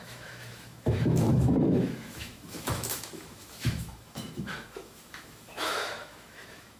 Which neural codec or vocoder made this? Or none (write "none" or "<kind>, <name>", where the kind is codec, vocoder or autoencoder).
autoencoder, DAC-VAE